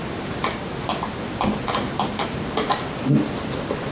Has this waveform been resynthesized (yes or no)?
no